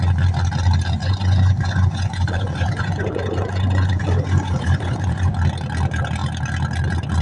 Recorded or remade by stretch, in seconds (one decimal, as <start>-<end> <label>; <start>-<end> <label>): 0.0-1.0 recorded; 1.0-5.3 remade; 5.3-7.2 recorded